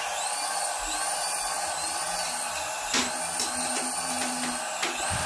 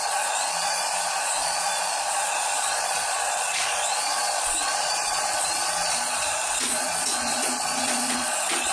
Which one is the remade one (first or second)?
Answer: second